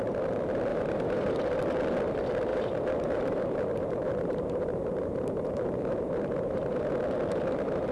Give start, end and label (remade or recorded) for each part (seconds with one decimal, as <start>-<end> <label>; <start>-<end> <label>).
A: 0.0-0.7 recorded; 0.7-1.3 remade; 1.3-2.5 recorded; 2.5-6.9 remade; 6.9-7.9 recorded